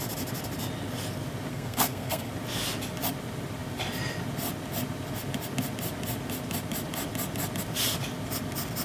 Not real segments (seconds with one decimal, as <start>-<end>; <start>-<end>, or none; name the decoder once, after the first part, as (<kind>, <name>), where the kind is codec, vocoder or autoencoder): 1.5-2.3 (codec, SNAC)